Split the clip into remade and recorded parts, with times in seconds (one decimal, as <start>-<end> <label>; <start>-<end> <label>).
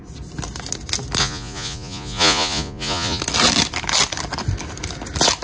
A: 0.0-1.2 recorded; 1.2-3.2 remade; 3.2-5.4 recorded